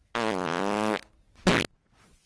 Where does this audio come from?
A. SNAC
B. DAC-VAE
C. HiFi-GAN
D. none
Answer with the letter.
D